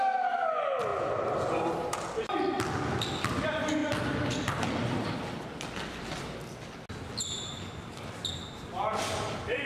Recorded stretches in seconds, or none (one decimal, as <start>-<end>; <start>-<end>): 0.0-0.9; 1.7-9.7